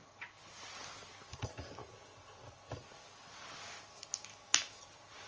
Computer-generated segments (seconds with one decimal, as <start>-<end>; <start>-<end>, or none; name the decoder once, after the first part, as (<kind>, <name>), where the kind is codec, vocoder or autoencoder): 4.3-4.8 (autoencoder, DAC-VAE)